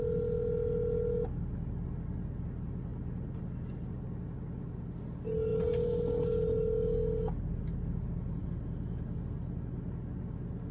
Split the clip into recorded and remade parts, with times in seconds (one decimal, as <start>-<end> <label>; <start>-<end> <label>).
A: 0.0-10.7 recorded